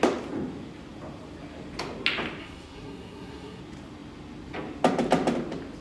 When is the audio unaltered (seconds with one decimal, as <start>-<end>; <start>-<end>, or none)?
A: 0.0-2.4; 3.6-5.8